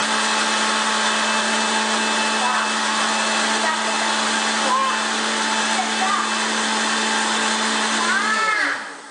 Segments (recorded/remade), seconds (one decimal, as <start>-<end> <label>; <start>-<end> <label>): 0.0-9.1 recorded